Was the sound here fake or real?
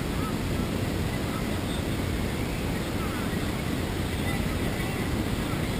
real